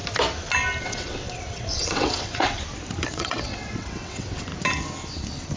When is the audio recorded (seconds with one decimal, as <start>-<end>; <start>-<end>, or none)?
0.0-0.8; 2.6-3.1; 4.5-5.6